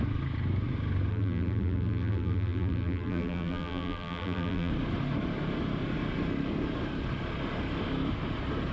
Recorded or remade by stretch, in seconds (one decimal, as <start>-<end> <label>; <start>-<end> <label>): 0.0-1.1 recorded; 1.1-4.7 remade; 4.7-8.7 recorded

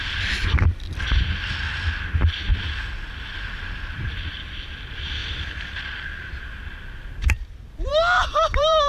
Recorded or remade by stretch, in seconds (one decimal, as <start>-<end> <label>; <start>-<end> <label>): 0.0-2.5 recorded; 2.5-3.5 remade; 3.5-5.2 recorded; 5.2-6.6 remade; 6.6-7.9 recorded; 7.9-8.9 remade

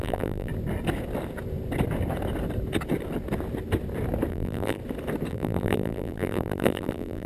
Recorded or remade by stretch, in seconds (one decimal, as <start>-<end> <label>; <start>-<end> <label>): 0.0-0.5 remade; 0.5-4.3 recorded; 4.3-4.8 remade; 4.8-5.3 recorded; 5.3-7.3 remade

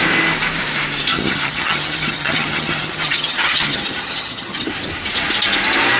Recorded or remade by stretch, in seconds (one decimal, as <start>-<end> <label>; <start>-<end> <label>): 0.0-1.1 recorded; 1.1-4.7 remade; 4.7-6.0 recorded